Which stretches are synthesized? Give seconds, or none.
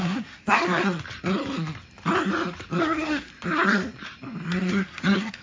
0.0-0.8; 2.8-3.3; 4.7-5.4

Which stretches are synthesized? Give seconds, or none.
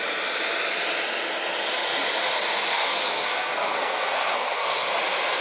2.7-4.9